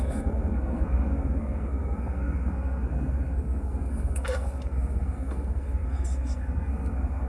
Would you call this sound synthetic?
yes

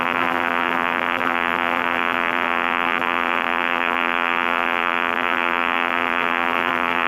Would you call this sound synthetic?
yes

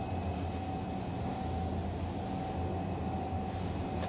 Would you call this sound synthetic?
no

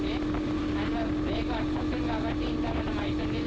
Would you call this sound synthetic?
no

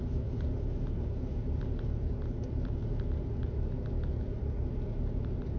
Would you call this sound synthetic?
no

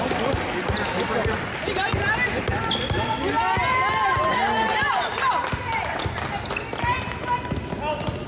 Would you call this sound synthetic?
no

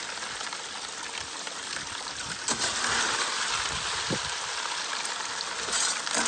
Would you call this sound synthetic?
no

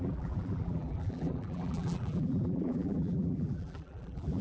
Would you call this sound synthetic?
yes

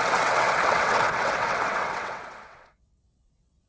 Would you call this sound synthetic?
yes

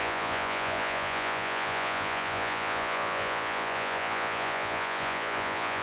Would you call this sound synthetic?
yes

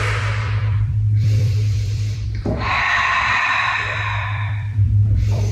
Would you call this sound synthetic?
yes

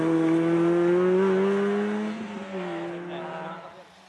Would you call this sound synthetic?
no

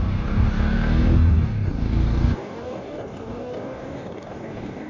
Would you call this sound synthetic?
yes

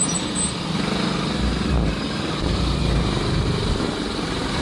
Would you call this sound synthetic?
yes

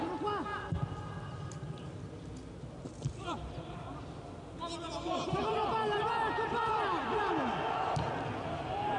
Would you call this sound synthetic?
no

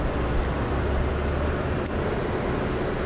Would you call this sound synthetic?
no